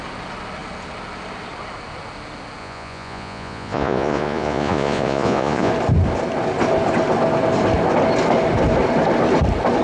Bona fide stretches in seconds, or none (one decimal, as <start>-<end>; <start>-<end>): 0.0-2.6; 5.7-9.8